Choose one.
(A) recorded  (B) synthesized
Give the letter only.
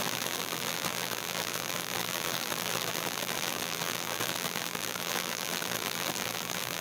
B